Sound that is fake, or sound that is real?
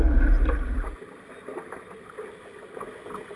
real